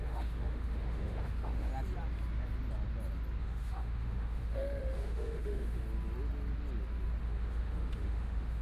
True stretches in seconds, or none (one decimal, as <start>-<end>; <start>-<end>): 1.7-3.4; 5.8-7.2

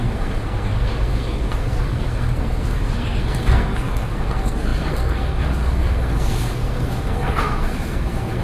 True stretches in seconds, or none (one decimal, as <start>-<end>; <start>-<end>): none

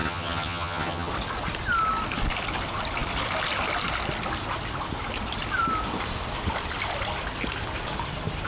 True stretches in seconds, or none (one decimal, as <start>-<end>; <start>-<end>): 1.1-8.5

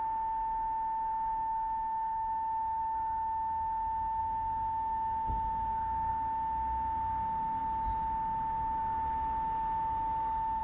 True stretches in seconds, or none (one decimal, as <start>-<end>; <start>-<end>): 0.0-1.1; 2.8-4.2; 6.1-10.6

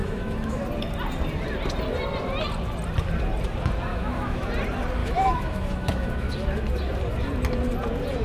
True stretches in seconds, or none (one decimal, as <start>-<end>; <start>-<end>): 0.6-3.9; 4.5-5.0; 6.3-8.2

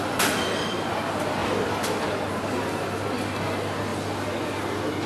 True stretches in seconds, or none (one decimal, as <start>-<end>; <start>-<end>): 0.0-5.1